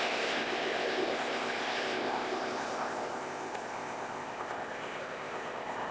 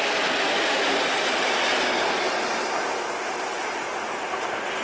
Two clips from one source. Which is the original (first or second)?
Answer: second